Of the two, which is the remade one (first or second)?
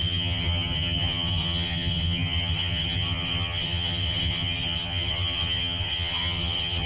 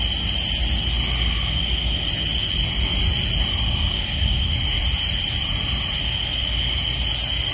first